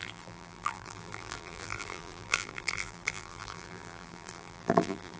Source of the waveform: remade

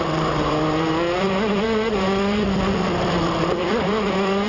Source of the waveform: remade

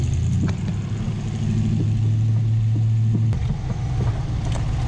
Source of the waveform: recorded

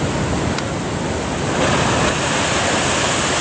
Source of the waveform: recorded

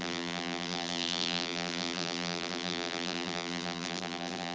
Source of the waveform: remade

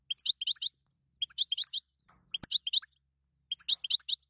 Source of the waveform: recorded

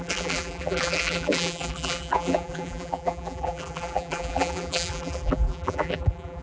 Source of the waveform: remade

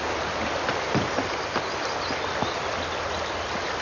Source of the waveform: recorded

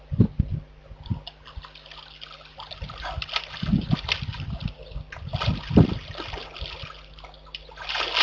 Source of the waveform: recorded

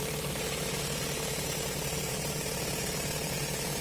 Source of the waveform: remade